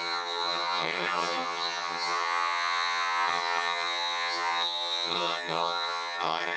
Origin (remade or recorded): remade